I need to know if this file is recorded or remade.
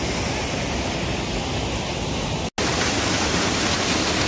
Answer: recorded